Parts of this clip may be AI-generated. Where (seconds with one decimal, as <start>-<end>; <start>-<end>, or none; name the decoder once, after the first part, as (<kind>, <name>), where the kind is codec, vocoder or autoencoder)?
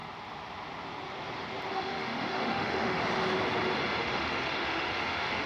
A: 1.7-3.0 (autoencoder, DAC-VAE); 4.0-5.5